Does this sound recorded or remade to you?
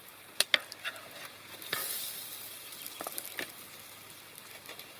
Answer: recorded